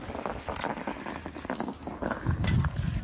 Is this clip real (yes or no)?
yes